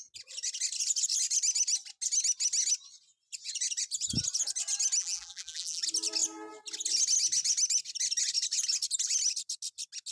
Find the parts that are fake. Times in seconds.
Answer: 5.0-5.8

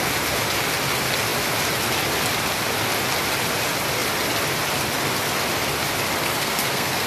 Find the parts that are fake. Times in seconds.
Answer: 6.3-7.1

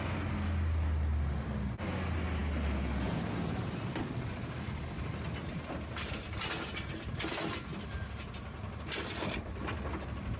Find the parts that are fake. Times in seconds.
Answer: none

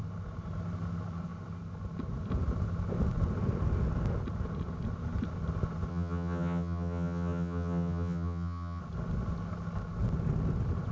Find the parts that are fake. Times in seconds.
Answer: 5.9-8.8